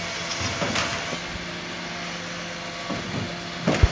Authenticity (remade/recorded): recorded